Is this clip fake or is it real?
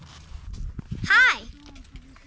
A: real